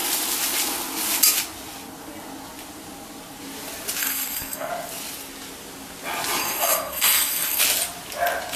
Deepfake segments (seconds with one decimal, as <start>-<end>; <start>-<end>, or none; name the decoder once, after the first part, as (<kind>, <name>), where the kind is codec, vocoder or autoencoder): 4.0-4.7 (codec, SNAC); 6.4-7.6